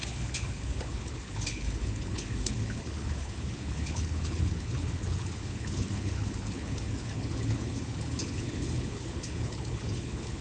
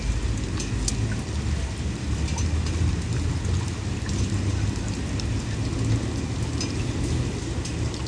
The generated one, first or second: first